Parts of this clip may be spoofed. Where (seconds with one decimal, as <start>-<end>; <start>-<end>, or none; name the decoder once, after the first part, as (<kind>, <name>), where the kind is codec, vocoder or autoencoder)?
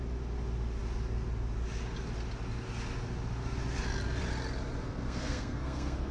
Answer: 4.8-6.1 (codec, SNAC)